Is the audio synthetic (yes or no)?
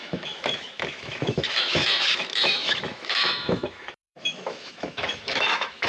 yes